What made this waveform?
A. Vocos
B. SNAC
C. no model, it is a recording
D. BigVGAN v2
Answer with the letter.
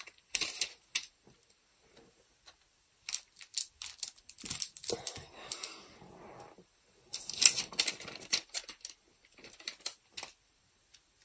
C